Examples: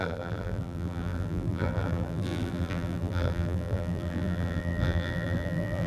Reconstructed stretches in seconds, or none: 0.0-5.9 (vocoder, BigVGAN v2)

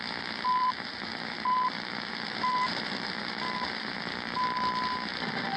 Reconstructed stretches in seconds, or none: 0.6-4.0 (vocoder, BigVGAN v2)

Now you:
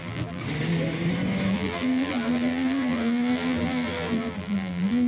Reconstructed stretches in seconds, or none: 0.0-0.4 (vocoder, BigVGAN v2); 1.5-5.1

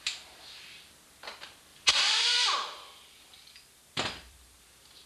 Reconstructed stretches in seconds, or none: 1.7-5.1 (vocoder, BigVGAN v2)

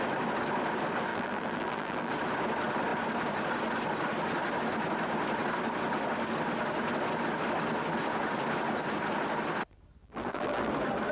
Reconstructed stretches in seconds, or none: 1.1-2.1 (vocoder, BigVGAN v2); 10.0-10.7

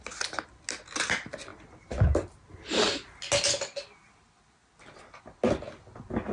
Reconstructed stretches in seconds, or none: none